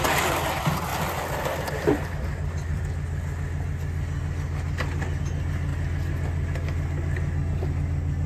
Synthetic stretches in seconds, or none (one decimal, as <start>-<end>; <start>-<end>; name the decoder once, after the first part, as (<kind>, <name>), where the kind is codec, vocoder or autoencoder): none